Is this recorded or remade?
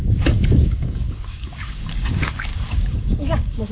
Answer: remade